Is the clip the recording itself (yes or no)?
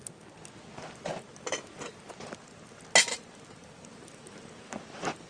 yes